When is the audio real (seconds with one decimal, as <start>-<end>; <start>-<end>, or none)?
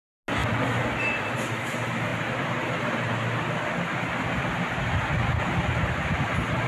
0.0-6.7